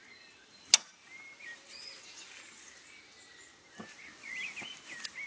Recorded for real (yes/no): yes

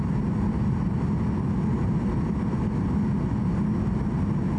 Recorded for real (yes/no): yes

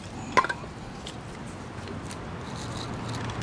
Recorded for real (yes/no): yes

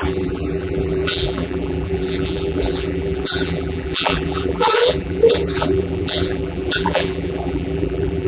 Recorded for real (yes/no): no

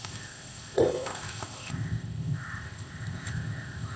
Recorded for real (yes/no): no